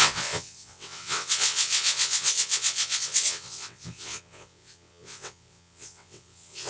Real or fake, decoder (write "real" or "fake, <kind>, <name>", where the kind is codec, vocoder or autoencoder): fake, vocoder, WaveNeXt